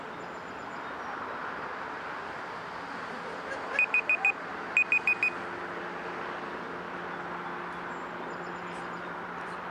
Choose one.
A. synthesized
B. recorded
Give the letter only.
B